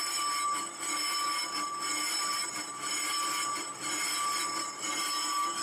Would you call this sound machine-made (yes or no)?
no